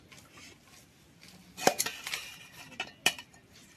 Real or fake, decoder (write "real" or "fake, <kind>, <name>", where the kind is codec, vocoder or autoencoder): real